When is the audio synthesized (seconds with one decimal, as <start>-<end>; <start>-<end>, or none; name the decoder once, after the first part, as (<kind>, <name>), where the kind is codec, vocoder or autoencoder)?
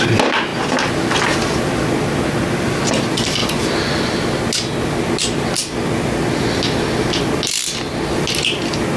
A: none